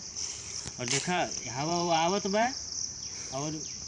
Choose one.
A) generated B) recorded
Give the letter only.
A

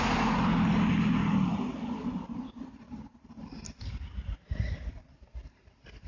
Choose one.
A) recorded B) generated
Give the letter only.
A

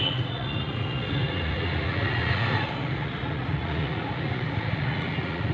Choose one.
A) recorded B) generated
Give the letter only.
B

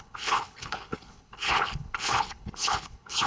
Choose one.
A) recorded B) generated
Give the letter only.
B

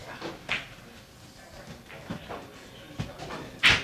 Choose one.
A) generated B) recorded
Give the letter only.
B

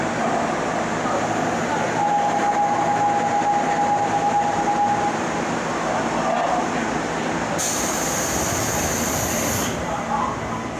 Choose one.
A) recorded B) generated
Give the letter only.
B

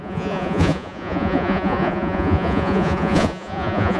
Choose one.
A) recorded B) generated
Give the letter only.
B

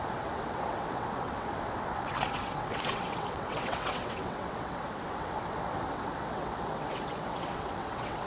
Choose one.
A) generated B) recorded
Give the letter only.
A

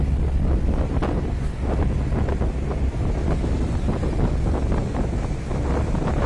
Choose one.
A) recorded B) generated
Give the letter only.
A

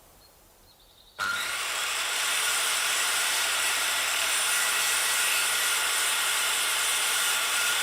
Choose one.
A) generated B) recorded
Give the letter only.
A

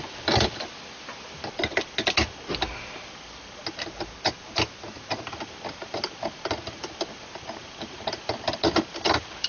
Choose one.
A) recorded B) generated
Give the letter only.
A